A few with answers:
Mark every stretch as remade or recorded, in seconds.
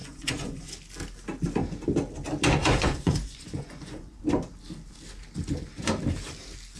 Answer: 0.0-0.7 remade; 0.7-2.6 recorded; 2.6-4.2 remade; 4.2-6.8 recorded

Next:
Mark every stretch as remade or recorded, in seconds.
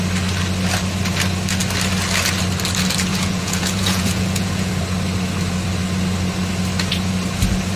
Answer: 0.0-3.1 recorded; 3.1-4.7 remade; 4.7-7.8 recorded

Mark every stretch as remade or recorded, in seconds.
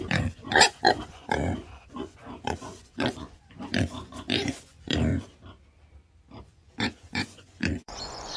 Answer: 0.0-5.1 remade; 5.1-6.4 recorded; 6.4-8.4 remade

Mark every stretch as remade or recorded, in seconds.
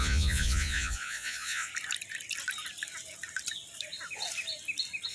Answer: 0.0-1.7 remade; 1.7-5.1 recorded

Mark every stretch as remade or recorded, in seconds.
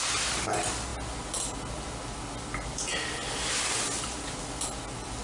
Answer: 0.0-5.2 recorded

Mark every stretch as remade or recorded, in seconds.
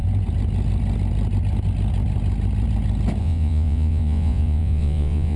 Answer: 0.0-3.2 recorded; 3.2-5.4 remade